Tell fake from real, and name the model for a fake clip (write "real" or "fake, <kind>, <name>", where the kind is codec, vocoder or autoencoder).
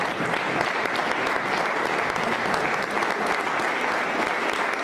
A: real